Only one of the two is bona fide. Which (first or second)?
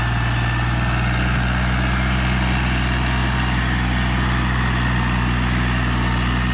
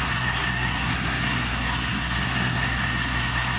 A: first